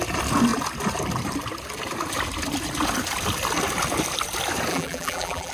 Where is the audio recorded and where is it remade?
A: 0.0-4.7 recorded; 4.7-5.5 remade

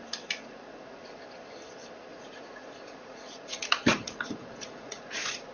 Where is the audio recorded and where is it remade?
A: 0.0-0.4 recorded; 0.4-1.2 remade; 1.2-2.1 recorded; 2.1-5.5 remade

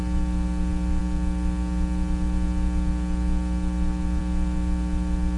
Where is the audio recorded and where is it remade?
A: 0.0-5.4 recorded

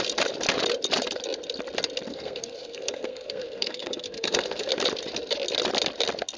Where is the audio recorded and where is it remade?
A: 0.0-2.1 recorded; 2.1-4.7 remade; 4.7-6.4 recorded

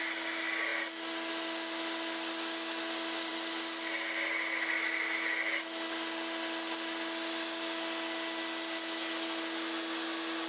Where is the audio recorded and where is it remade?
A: 0.0-10.5 recorded

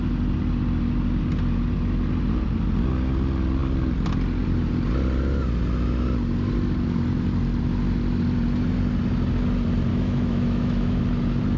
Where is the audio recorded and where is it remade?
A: 0.0-9.9 recorded; 9.9-11.0 remade; 11.0-11.6 recorded

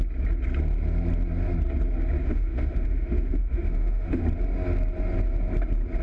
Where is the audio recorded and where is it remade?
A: 0.0-2.2 recorded; 2.2-4.2 remade; 4.2-6.0 recorded

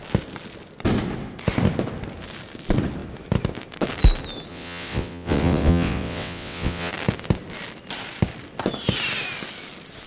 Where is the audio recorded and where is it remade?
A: 0.0-4.5 recorded; 4.5-6.9 remade; 6.9-10.1 recorded